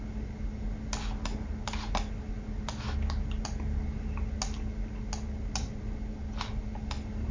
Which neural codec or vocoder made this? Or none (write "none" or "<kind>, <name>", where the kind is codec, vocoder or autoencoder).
none